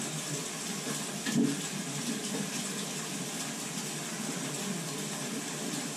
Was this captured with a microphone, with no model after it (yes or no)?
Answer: yes